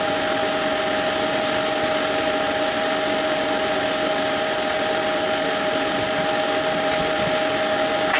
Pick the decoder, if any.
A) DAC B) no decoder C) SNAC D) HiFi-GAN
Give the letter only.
B